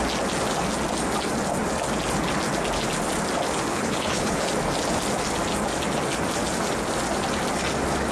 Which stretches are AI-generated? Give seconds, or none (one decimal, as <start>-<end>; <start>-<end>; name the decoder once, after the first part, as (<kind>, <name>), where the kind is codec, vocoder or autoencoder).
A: 3.7-4.5 (codec, HILCodec)

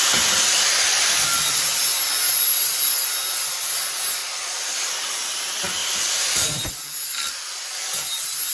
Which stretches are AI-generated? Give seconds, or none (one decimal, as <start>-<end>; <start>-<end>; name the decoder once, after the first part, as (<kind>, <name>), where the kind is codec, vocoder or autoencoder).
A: none

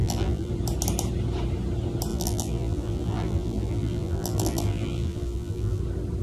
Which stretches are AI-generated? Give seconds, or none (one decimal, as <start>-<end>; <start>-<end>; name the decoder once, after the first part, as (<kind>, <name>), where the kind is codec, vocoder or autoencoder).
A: 0.0-0.5 (vocoder, BigVGAN v2); 2.1-5.8

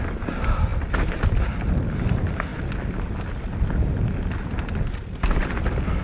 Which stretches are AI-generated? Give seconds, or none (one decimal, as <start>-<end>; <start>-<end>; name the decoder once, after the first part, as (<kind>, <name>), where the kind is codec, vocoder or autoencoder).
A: none

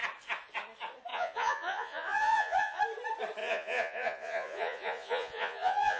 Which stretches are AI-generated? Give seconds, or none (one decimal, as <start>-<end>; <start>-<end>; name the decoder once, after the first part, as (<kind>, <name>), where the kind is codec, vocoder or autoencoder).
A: 1.1-2.8 (vocoder, Vocos); 3.4-6.0

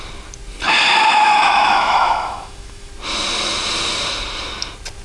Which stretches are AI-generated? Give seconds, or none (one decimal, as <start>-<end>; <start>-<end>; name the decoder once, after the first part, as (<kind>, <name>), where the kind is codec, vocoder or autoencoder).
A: 1.1-2.9 (autoencoder, DAC-VAE)